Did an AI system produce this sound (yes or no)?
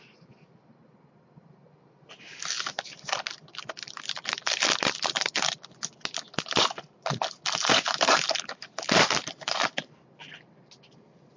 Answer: no